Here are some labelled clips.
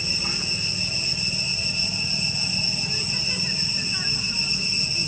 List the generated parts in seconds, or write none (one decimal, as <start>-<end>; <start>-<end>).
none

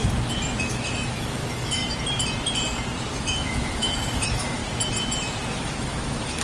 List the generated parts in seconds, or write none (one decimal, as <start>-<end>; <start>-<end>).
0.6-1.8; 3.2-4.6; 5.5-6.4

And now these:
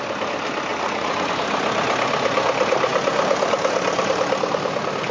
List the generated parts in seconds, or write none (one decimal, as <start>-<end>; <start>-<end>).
0.7-1.3

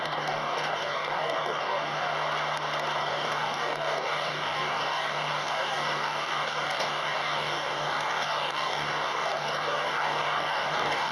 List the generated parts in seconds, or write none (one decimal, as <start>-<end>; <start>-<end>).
0.0-2.1; 3.0-11.1